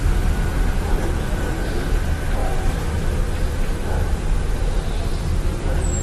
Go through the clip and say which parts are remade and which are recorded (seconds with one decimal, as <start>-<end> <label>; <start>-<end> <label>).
0.0-2.4 recorded; 2.4-3.2 remade; 3.2-3.9 recorded; 3.9-4.4 remade; 4.4-6.0 recorded